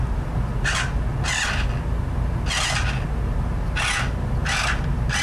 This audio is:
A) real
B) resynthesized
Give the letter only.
A